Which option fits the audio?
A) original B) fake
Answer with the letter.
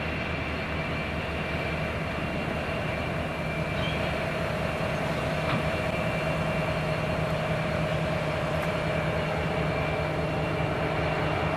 A